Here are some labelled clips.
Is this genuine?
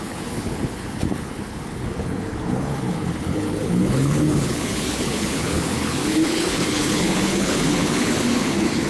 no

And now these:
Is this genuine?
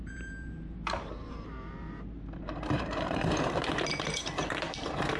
no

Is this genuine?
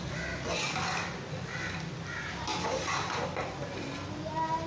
yes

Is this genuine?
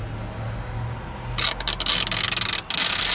yes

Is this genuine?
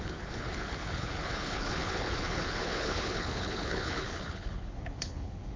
no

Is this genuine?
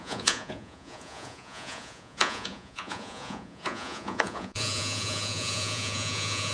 no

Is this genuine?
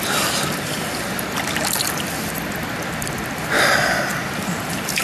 yes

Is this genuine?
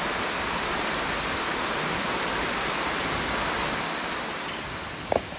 yes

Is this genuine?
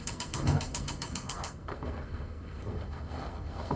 no